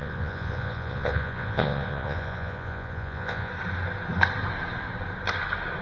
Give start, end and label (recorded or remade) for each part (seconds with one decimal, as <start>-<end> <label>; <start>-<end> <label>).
0.0-3.5 remade; 3.5-5.8 recorded